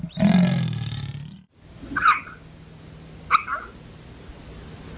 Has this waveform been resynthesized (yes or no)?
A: no